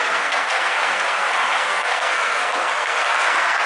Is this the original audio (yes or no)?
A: no